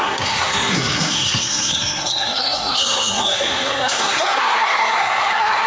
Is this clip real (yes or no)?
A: no